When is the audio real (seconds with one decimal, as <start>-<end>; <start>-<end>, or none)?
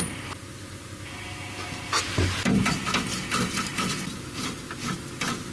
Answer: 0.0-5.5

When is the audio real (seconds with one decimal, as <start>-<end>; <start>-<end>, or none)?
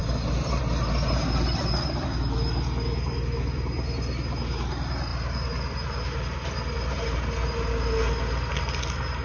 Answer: 0.0-9.2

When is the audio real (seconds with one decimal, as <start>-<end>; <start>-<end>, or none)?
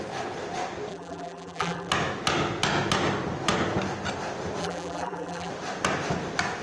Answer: 0.0-0.9; 1.9-4.6; 5.5-6.6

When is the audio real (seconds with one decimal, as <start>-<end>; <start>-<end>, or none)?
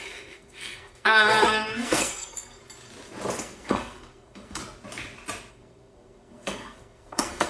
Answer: 2.6-3.4; 4.6-5.5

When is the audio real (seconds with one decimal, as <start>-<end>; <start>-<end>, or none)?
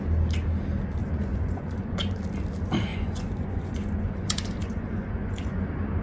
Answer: 0.0-1.0; 2.2-2.9; 5.6-6.0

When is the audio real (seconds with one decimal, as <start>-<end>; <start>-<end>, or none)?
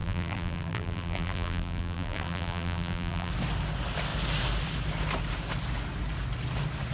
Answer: 3.3-6.9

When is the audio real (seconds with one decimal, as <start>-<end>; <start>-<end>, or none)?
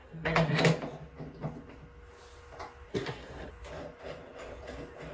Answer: 0.6-2.9; 3.5-5.1